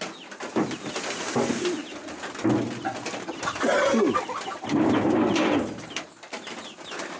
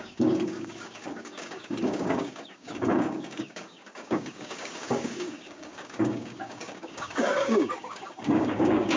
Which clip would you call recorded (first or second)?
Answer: first